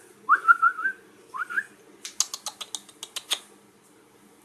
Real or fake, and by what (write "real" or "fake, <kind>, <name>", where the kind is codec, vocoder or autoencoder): real